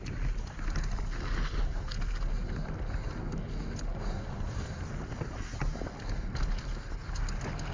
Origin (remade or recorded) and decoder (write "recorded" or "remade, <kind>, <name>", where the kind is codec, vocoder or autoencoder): recorded